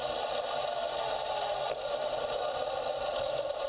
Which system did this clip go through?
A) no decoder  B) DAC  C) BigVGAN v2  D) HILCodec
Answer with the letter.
A